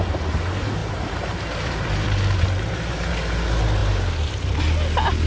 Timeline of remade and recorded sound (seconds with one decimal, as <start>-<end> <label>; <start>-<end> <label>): 0.0-0.8 recorded; 0.8-3.1 remade; 3.1-5.3 recorded